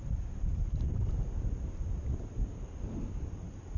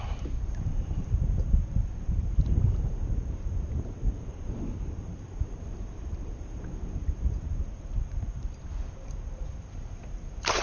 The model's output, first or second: second